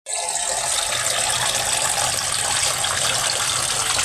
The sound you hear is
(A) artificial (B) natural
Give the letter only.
B